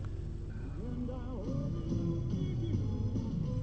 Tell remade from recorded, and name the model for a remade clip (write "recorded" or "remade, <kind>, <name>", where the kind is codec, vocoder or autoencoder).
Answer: recorded